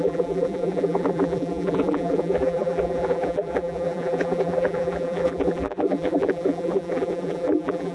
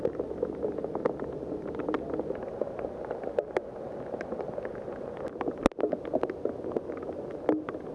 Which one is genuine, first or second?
second